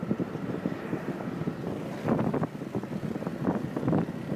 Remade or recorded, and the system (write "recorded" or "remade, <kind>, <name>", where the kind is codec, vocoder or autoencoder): recorded